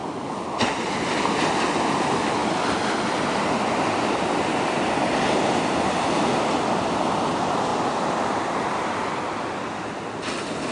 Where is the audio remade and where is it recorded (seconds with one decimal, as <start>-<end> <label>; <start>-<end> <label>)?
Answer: 0.0-1.8 remade; 1.8-2.4 recorded; 2.4-4.3 remade; 4.3-7.7 recorded; 7.7-9.2 remade; 9.2-10.7 recorded